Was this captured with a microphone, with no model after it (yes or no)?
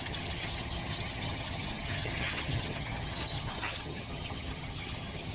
no